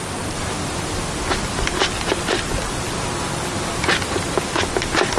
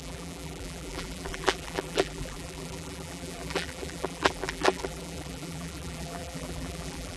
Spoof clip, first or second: second